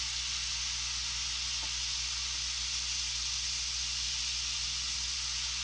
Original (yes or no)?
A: yes